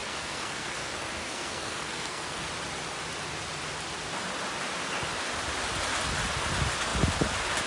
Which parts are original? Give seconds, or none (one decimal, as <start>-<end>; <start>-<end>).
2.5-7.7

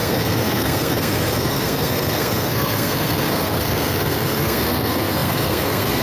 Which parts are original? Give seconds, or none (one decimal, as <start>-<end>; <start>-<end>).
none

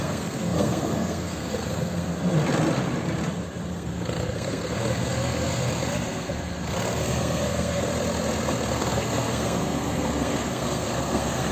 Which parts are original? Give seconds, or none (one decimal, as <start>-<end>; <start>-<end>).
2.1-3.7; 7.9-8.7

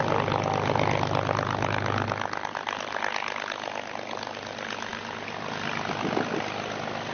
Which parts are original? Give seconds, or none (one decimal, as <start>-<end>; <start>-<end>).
0.0-7.1